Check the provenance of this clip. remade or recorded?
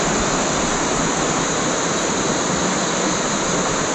recorded